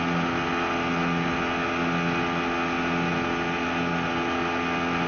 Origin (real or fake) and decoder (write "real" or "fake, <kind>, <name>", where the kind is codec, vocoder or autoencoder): real